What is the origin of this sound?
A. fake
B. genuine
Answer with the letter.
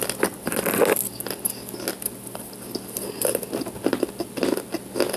B